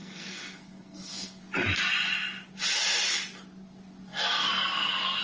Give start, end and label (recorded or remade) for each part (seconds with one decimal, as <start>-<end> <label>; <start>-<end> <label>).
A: 0.0-1.4 remade; 1.4-4.1 recorded; 4.1-5.2 remade